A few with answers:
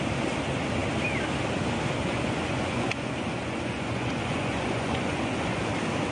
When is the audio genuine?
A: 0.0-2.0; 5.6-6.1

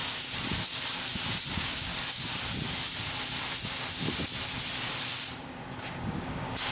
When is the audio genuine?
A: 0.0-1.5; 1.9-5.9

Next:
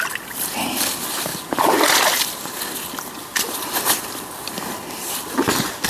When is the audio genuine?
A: 0.0-5.9